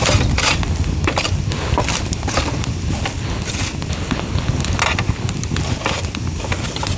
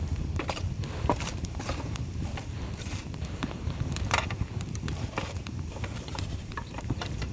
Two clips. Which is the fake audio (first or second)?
second